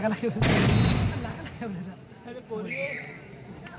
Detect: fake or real real